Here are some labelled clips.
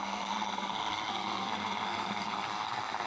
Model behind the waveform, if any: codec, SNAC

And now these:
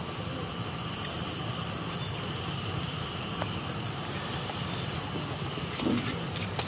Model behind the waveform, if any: none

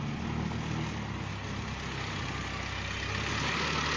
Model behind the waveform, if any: none